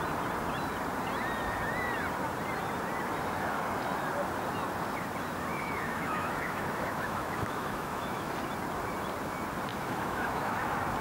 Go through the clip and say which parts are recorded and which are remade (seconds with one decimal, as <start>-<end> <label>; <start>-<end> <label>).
0.0-5.5 recorded; 5.5-8.3 remade; 8.3-9.7 recorded; 9.7-10.6 remade; 10.6-11.0 recorded